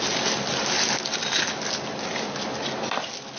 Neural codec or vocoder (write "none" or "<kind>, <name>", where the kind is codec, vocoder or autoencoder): none